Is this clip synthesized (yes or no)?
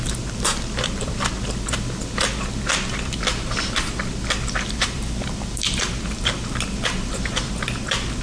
yes